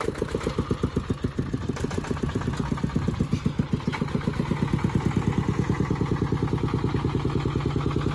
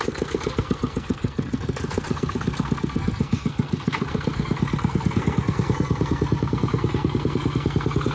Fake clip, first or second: second